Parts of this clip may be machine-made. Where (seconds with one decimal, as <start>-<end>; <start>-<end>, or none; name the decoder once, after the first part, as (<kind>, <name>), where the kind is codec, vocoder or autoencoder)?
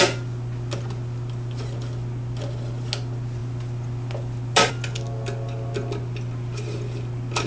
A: none